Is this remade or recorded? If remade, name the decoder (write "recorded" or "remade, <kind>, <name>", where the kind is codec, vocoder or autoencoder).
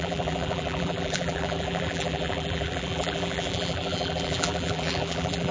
remade, vocoder, BigVGAN v2